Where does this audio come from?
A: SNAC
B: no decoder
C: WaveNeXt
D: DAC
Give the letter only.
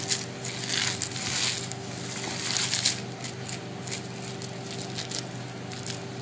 B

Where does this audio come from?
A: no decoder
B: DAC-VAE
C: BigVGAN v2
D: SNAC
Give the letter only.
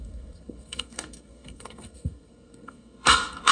D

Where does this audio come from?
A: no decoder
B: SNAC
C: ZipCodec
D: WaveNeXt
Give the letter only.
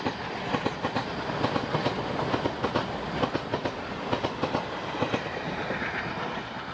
A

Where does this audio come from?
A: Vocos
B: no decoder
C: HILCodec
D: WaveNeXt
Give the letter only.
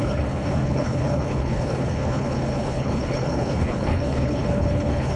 C